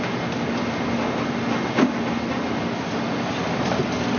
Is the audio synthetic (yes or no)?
no